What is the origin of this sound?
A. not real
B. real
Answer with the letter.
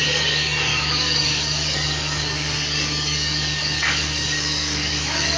A